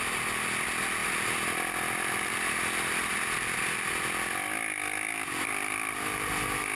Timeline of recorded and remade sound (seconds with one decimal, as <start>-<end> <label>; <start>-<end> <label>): 0.0-1.0 recorded; 1.0-3.7 remade; 3.7-6.7 recorded